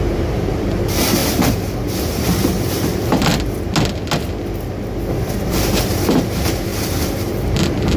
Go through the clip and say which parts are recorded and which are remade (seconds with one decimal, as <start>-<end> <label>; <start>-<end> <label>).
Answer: 0.0-1.2 remade; 1.2-2.0 recorded; 2.0-3.3 remade; 3.3-5.5 recorded; 5.5-8.0 remade